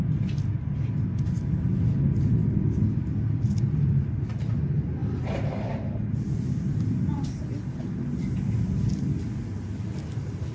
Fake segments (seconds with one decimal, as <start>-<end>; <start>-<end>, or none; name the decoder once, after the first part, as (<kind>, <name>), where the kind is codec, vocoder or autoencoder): none